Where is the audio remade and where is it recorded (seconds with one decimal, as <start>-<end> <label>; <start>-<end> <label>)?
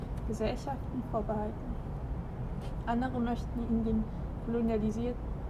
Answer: 0.0-5.5 recorded